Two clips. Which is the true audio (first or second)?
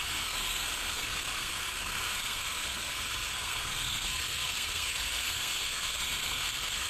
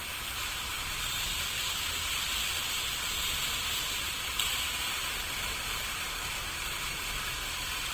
second